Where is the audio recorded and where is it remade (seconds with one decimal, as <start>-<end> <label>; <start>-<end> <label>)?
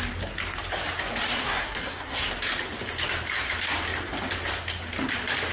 0.0-1.4 recorded; 1.4-2.3 remade; 2.3-5.5 recorded